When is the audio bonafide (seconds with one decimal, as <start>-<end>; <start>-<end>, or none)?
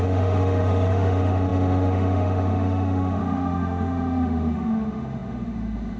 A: none